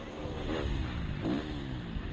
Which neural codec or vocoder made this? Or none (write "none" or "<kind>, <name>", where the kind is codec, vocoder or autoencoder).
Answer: none